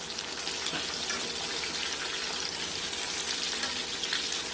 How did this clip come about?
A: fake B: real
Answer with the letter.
B